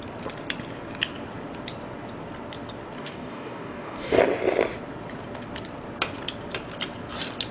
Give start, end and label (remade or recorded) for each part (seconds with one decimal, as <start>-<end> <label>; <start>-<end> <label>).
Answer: 0.0-3.0 recorded; 3.0-4.2 remade; 4.2-7.5 recorded

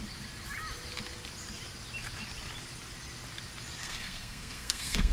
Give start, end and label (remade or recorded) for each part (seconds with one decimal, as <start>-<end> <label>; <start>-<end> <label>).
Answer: 0.0-3.8 recorded; 3.8-5.1 remade

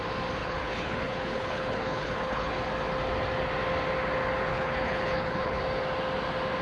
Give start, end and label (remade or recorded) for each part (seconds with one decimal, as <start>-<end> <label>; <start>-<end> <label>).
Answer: 0.0-0.4 recorded; 0.4-2.6 remade; 2.6-4.5 recorded; 4.5-5.6 remade; 5.6-6.6 recorded

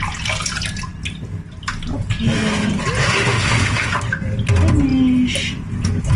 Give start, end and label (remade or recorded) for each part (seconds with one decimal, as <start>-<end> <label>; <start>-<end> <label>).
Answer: 0.0-3.0 recorded; 3.0-3.9 remade; 3.9-6.2 recorded